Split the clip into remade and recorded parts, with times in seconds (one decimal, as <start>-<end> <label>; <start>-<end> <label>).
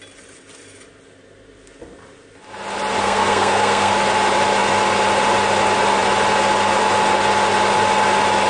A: 0.0-3.0 recorded; 3.0-3.9 remade; 3.9-8.5 recorded